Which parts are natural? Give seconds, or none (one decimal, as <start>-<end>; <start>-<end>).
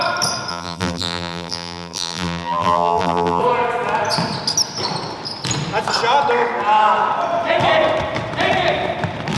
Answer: 0.0-0.5; 3.4-9.4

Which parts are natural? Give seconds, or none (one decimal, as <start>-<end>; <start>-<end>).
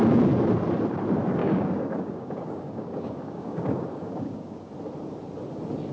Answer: 0.0-1.4; 4.7-5.9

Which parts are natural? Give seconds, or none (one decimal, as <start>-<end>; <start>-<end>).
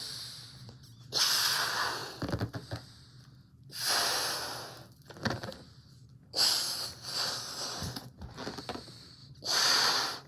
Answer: 0.0-0.6; 1.2-9.2; 9.9-10.3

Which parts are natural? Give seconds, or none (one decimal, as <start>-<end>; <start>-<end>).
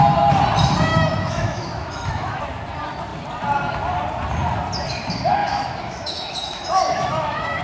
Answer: 0.0-0.9; 2.4-5.4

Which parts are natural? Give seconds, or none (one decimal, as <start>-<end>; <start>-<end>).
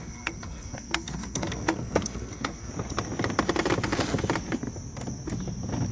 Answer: 2.7-5.9